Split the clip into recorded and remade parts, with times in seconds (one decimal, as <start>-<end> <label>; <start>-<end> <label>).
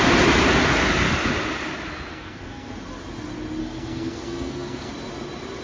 0.0-2.1 recorded; 2.1-2.7 remade; 2.7-3.6 recorded; 3.6-4.9 remade; 4.9-5.6 recorded